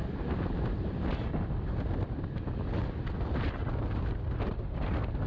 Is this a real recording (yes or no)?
yes